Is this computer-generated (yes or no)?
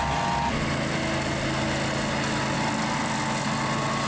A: no